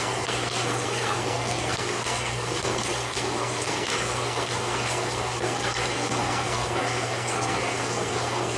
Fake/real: fake